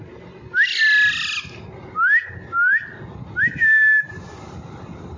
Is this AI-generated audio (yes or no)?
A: no